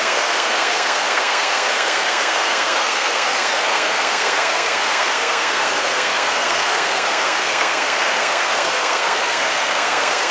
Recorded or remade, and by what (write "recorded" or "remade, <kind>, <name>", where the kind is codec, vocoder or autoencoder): remade, codec, SNAC